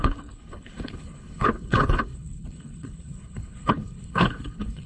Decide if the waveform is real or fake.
fake